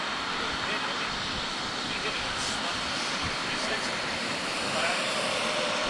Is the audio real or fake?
fake